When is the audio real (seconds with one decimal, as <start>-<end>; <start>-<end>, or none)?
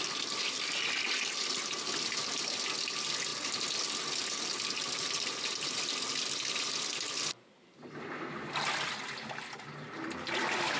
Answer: 0.0-10.8